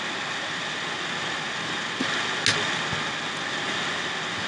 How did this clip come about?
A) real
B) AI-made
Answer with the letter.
A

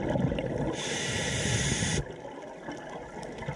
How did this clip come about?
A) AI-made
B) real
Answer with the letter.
B